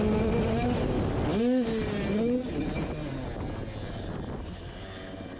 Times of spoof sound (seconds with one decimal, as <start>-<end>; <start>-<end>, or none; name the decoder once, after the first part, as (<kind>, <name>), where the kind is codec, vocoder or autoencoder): none